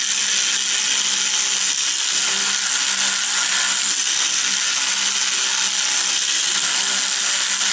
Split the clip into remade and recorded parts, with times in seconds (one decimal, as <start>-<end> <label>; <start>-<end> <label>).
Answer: 0.0-7.7 recorded